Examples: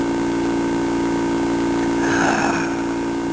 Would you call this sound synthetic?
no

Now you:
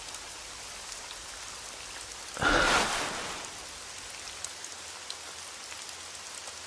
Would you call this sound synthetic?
no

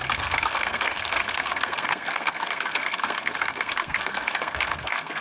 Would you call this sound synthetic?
yes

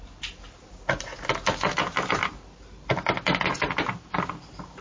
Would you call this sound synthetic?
no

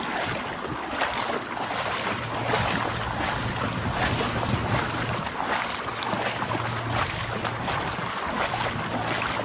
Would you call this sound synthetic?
no